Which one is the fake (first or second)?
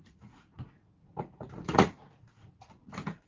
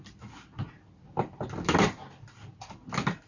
first